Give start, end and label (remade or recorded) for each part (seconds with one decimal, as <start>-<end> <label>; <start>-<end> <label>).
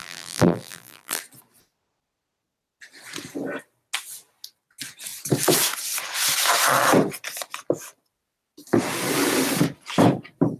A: 0.0-1.2 remade; 1.2-10.6 recorded